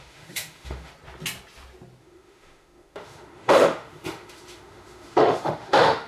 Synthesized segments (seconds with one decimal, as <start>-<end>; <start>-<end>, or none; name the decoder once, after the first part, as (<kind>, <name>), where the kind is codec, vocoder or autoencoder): 0.0-0.9 (autoencoder, DAC-VAE); 2.0-6.1